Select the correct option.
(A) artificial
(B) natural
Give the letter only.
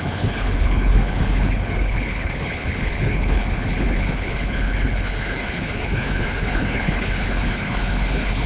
A